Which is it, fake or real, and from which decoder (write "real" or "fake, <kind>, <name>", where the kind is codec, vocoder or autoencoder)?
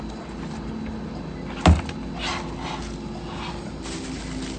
real